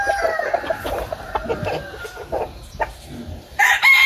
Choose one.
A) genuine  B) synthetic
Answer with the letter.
B